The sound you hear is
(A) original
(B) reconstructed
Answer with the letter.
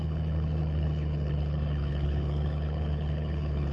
B